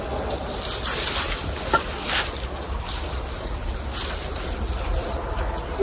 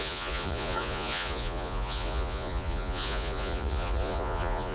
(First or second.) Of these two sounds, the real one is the first